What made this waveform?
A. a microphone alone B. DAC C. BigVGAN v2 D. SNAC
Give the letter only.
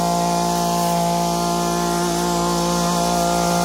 A